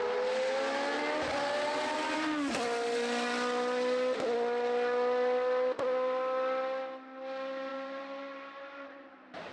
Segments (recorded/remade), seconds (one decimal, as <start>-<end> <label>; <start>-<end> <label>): 0.0-7.7 recorded; 7.7-9.5 remade

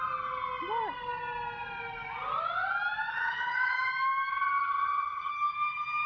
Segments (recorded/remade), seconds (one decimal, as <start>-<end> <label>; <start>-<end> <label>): 0.0-3.1 recorded; 3.1-3.9 remade; 3.9-4.3 recorded; 4.3-5.3 remade; 5.3-6.1 recorded

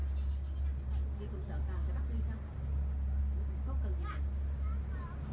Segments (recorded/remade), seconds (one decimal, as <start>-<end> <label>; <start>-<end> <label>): 0.0-5.3 recorded

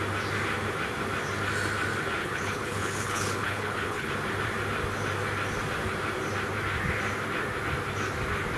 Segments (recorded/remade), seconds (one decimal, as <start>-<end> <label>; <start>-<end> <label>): 0.0-2.2 recorded; 2.2-4.1 remade; 4.1-8.6 recorded

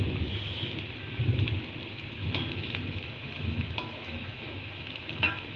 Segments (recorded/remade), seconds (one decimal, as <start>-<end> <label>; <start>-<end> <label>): 0.0-2.2 recorded; 2.2-5.6 remade